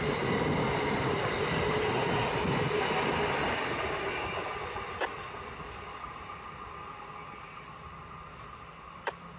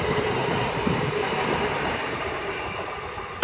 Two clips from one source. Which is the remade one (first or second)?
second